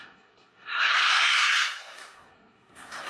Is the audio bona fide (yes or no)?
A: no